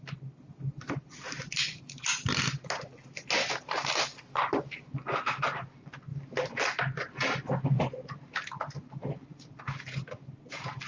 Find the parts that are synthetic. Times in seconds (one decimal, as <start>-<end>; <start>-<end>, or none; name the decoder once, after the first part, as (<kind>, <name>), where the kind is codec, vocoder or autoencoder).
none